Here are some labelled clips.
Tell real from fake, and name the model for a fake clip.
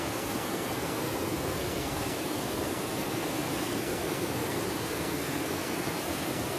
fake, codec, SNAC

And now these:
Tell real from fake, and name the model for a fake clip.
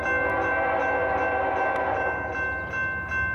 real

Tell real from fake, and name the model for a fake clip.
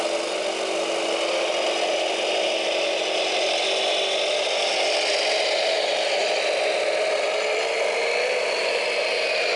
real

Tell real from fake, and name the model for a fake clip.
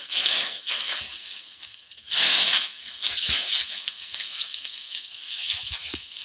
fake, codec, SNAC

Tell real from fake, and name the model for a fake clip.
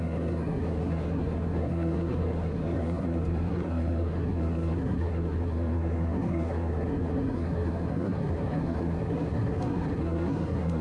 fake, codec, SNAC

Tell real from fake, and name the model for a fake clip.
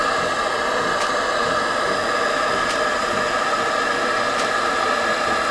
real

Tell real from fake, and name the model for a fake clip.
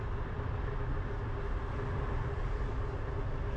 real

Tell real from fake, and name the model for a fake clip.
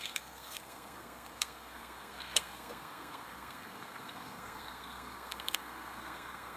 fake, codec, SNAC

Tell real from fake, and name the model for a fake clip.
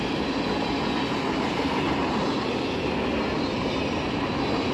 real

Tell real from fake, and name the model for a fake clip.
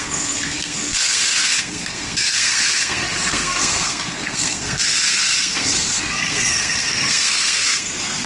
fake, codec, SNAC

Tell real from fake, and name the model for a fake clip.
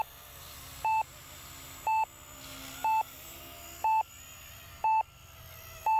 real